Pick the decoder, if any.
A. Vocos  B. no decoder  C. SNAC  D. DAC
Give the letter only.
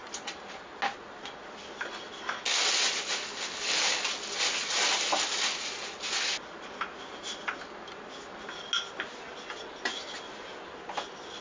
B